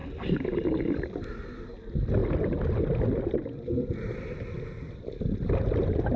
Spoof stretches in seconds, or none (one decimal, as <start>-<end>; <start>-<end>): none